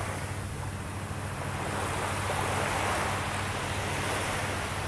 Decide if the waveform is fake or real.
real